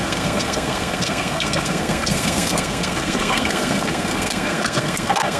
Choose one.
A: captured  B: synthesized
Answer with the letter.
B